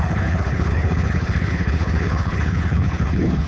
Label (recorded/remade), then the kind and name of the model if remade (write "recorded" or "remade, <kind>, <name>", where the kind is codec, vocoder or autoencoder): remade, codec, HILCodec